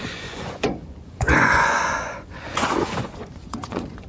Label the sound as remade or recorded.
remade